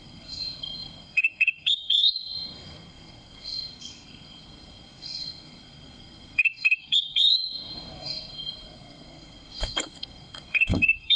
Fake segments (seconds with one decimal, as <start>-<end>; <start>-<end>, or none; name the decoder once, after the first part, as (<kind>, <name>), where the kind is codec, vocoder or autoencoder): 0.0-11.2 (codec, SNAC)